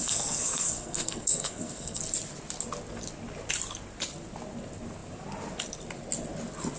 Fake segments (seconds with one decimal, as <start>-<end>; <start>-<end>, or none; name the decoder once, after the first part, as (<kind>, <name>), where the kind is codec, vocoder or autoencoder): 0.0-2.0 (codec, SNAC)